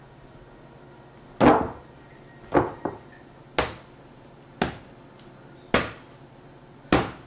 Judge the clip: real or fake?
real